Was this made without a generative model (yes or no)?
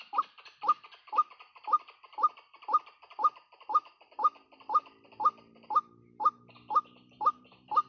yes